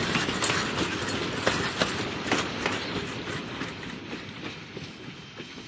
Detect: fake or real real